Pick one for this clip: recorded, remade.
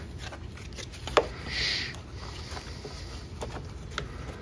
recorded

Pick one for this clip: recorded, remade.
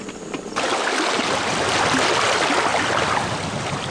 recorded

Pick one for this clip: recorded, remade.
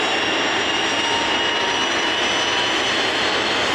recorded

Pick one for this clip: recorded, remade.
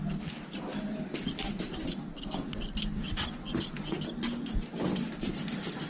recorded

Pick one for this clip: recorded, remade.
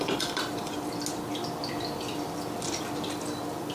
recorded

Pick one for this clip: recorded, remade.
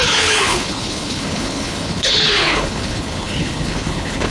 remade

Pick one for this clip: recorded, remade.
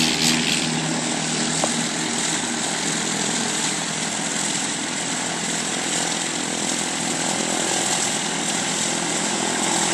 recorded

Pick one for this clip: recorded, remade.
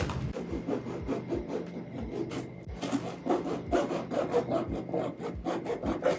recorded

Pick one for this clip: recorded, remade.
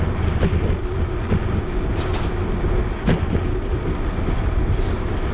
recorded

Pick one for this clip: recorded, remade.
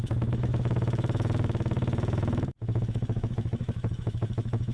remade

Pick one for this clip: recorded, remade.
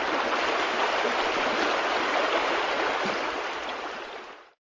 recorded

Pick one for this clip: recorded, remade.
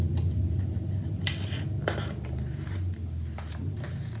recorded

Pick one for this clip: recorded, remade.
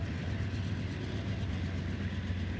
recorded